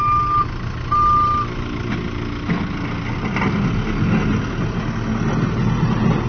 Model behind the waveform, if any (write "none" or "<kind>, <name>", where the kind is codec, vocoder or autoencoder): none